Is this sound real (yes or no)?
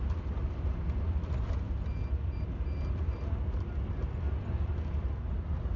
yes